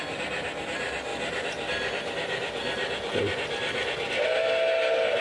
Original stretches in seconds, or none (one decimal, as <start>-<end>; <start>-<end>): 0.0-5.2